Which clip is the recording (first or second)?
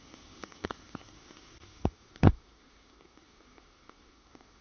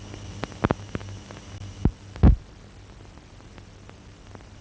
second